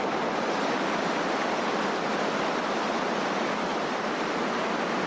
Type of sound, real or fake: fake